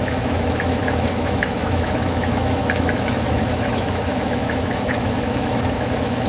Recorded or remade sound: remade